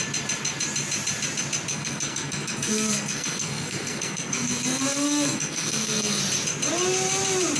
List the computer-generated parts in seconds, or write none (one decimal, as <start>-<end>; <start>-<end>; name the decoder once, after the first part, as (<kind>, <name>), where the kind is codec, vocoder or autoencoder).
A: 1.7-6.2 (codec, SNAC)